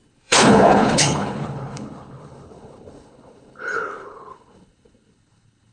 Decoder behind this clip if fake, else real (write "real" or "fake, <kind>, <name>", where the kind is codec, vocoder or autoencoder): fake, codec, HILCodec